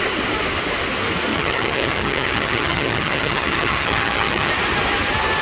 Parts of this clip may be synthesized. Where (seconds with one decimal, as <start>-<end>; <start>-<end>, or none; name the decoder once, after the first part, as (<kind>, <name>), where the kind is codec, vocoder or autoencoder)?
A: 1.3-4.5 (vocoder, HiFi-GAN)